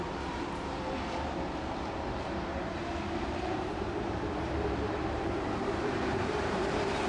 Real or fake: fake